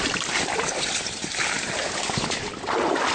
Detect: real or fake real